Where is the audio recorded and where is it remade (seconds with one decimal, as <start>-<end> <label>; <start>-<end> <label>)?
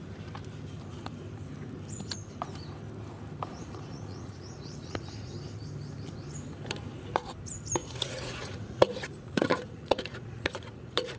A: 0.0-3.5 recorded; 3.5-5.3 remade; 5.3-7.8 recorded; 7.8-11.2 remade